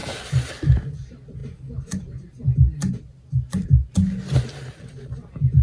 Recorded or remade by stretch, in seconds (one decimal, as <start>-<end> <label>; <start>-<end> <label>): 0.0-5.6 recorded